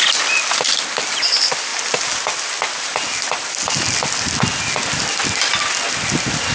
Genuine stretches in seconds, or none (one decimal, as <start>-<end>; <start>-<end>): 0.0-6.5